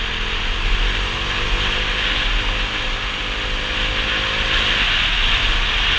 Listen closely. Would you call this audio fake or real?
real